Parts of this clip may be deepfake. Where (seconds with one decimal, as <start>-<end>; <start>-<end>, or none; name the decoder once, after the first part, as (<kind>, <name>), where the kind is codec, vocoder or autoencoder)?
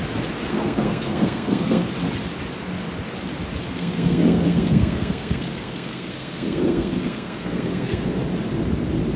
0.5-1.9 (codec, SNAC); 3.6-8.2